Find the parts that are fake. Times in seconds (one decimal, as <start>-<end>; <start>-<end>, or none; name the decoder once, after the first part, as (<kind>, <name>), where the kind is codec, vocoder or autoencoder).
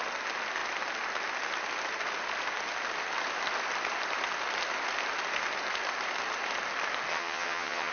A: 7.1-7.9 (vocoder, HiFi-GAN)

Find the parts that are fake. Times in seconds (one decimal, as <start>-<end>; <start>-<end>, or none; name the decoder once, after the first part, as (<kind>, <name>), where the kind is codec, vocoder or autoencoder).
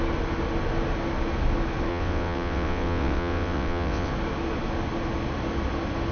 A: 1.9-4.1 (vocoder, WaveNeXt)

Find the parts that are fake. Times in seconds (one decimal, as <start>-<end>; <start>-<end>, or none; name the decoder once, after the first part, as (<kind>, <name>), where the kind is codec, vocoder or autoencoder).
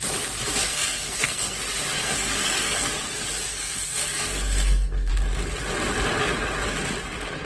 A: 0.6-1.6 (codec, SNAC); 2.0-2.9; 3.5-5.1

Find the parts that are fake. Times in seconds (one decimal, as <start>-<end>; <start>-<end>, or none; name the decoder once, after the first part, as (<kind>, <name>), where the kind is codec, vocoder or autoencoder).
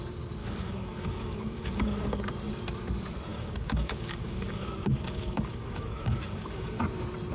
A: 0.4-2.2 (codec, DAC); 3.3-6.8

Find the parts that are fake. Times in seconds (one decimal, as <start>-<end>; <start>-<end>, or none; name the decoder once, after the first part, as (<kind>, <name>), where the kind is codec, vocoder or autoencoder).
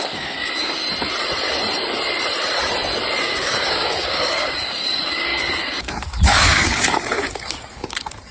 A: 0.0-0.8 (codec, DAC); 3.2-8.3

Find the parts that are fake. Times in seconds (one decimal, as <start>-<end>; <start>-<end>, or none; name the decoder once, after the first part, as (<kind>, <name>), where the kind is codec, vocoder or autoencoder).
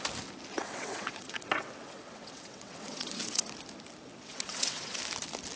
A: 0.5-3.5 (vocoder, WaveNeXt); 4.1-5.0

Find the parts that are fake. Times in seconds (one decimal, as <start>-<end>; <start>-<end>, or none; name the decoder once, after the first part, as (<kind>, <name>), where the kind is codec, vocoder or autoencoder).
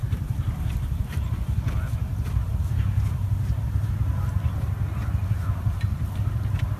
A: 0.0-1.2 (vocoder, BigVGAN v2); 2.4-3.9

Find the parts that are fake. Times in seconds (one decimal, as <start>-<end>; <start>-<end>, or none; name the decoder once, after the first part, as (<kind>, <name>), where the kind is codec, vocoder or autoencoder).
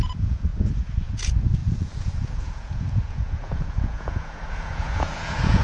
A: 0.0-5.6 (vocoder, Vocos)